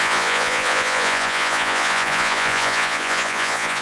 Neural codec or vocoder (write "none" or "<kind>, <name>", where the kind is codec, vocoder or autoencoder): vocoder, Vocos